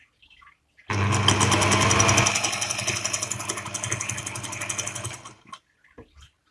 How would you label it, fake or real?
real